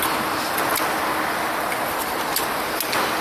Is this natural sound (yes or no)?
yes